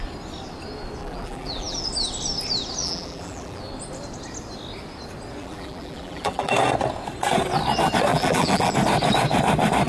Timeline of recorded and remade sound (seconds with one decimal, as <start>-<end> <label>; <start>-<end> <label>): 0.0-1.0 recorded; 1.0-1.8 remade; 1.8-2.8 recorded; 2.8-3.6 remade; 3.6-5.4 recorded; 5.4-6.5 remade; 6.5-8.1 recorded; 8.1-8.7 remade; 8.7-9.9 recorded